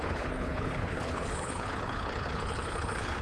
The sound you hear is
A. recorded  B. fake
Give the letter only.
B